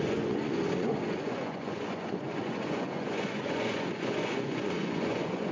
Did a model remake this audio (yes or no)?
yes